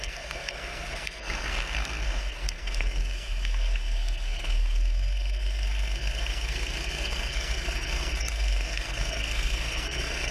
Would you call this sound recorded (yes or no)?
no